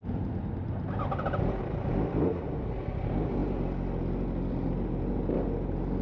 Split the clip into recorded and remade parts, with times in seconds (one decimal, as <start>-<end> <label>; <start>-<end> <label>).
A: 0.0-6.0 recorded